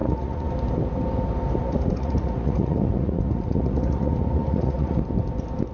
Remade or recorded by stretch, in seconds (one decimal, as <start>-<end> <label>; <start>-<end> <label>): 0.0-0.5 remade; 0.5-1.6 recorded; 1.6-5.0 remade; 5.0-5.7 recorded